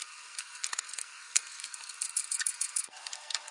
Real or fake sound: fake